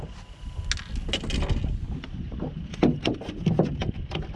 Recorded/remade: recorded